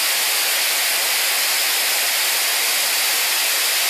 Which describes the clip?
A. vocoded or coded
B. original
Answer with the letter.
B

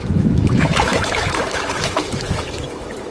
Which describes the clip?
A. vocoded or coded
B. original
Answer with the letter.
A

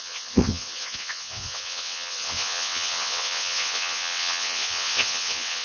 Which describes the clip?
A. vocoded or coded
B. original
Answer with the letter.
A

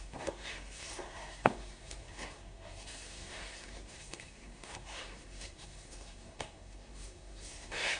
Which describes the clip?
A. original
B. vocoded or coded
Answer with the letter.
B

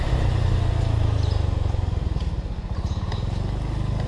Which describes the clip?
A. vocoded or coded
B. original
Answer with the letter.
B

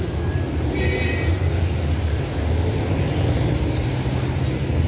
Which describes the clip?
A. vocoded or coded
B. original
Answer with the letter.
B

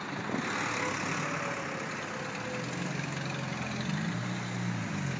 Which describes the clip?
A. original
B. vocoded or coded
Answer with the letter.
A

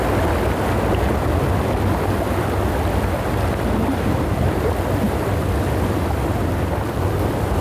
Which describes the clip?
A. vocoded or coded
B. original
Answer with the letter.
B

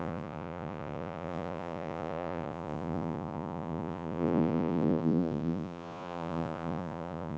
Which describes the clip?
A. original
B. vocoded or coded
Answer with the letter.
B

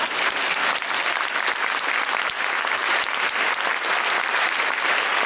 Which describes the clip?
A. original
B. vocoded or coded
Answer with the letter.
A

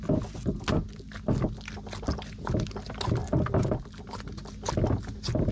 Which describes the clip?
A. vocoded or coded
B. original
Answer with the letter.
B